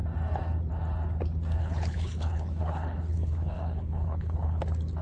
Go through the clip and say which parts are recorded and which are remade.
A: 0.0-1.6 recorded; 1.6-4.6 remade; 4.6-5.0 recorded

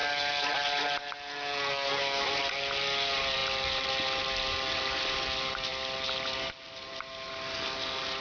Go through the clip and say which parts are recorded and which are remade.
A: 0.0-8.2 recorded

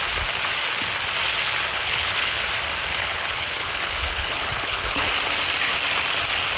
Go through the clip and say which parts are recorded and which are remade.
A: 0.0-1.7 recorded; 1.7-2.4 remade; 2.4-2.9 recorded; 2.9-5.1 remade; 5.1-6.6 recorded

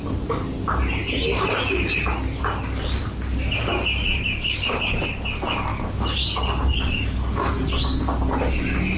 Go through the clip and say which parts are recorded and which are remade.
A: 0.0-3.0 recorded; 3.0-4.8 remade; 4.8-5.7 recorded; 5.7-7.5 remade; 7.5-9.0 recorded